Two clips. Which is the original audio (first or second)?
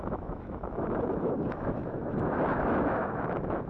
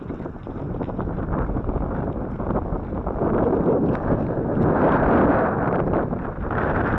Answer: second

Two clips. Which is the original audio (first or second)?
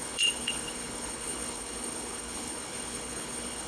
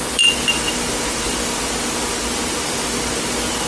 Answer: second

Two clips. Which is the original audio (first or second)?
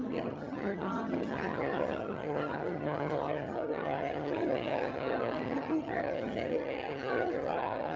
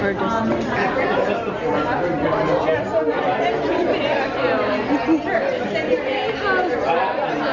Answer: second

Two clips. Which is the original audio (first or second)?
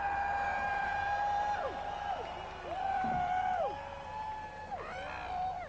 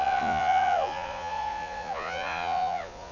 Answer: first